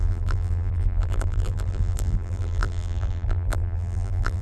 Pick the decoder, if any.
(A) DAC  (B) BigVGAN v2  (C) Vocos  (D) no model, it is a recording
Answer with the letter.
B